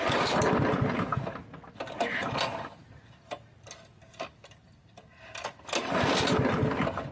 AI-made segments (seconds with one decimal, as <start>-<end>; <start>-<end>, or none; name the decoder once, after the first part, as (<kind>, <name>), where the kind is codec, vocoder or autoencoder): none

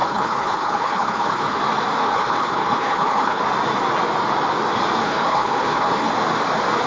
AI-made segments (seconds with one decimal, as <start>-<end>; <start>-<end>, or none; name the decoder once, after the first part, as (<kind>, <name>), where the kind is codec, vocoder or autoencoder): 0.0-1.6 (codec, HILCodec); 2.0-3.4; 5.0-6.1

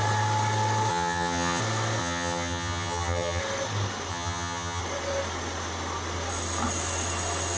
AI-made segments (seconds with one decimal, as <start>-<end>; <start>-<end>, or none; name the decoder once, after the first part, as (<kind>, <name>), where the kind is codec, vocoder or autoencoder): 0.9-1.6 (vocoder, HiFi-GAN); 2.0-3.4; 4.1-4.8

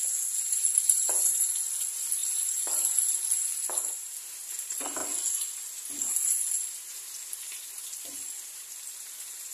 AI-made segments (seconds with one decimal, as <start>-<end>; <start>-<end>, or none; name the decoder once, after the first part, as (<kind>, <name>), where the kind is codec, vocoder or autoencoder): none

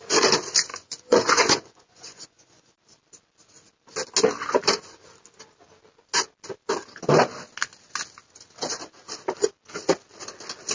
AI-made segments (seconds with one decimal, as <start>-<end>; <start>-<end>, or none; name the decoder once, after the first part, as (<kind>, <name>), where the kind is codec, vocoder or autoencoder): 0.7-2.7 (vocoder, Vocos)

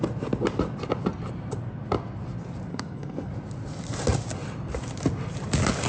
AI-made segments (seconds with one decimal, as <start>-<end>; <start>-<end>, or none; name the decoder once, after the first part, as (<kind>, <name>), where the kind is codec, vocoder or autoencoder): 2.7-3.3 (codec, SNAC)